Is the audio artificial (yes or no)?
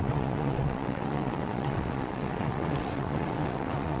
yes